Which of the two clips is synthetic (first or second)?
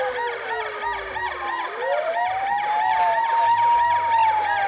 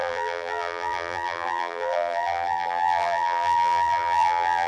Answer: second